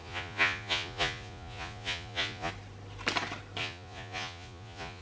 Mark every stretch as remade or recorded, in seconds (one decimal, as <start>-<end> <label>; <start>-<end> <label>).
0.0-2.5 remade; 2.5-3.6 recorded; 3.6-5.0 remade